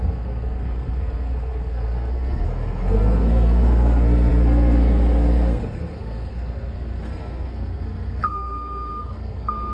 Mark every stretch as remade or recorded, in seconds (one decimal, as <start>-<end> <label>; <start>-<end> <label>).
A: 0.0-9.7 remade